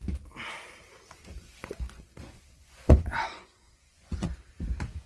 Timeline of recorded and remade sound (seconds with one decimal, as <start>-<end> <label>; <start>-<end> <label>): 0.0-1.4 recorded; 1.4-4.5 remade; 4.5-5.1 recorded